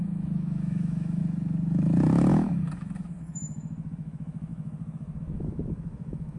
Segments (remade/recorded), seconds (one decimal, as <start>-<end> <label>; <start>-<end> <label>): 0.0-1.2 remade; 1.2-2.3 recorded; 2.3-6.4 remade